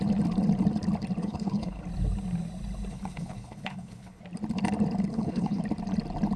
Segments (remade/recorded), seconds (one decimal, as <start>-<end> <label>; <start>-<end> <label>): 0.0-1.2 recorded; 1.2-1.8 remade; 1.8-2.9 recorded; 2.9-4.2 remade; 4.2-5.1 recorded; 5.1-5.6 remade; 5.6-6.4 recorded